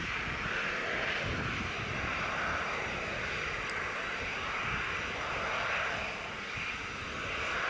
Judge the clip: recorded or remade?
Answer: recorded